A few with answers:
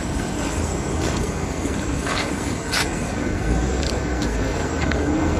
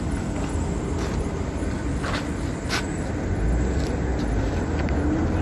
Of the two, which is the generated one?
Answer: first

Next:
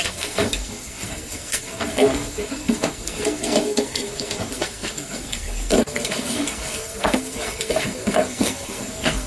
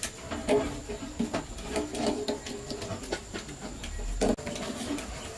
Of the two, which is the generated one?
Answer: first